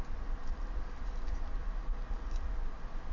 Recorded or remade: recorded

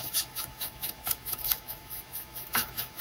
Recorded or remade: remade